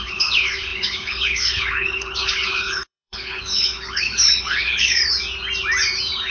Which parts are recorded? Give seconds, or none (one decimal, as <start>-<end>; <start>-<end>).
5.0-6.3